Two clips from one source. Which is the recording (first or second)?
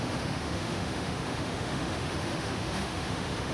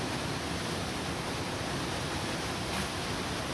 second